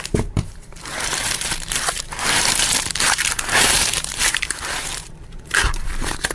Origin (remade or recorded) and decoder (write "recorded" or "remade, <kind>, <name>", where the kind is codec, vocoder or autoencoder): remade, vocoder, BigVGAN v2